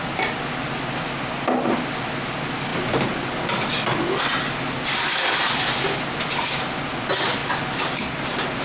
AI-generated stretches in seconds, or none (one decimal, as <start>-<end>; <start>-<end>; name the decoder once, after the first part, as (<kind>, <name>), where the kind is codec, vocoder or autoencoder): none